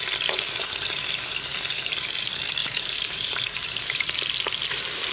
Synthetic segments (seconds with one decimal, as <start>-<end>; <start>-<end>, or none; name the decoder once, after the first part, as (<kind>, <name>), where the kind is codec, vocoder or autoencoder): 2.6-4.1 (vocoder, BigVGAN v2)